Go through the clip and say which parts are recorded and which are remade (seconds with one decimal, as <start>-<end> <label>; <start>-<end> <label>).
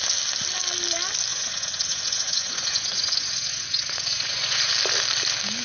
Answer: 0.0-1.3 recorded; 1.3-4.7 remade; 4.7-5.6 recorded